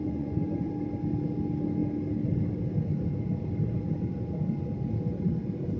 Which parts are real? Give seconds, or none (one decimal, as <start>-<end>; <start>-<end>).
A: 0.7-5.8